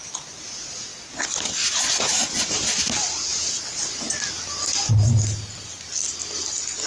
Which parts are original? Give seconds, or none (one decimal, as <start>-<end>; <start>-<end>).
0.0-6.9